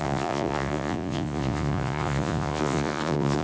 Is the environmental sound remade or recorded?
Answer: remade